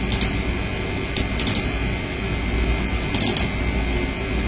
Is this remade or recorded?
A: recorded